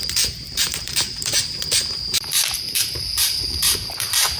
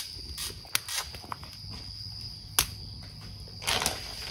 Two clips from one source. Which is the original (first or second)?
second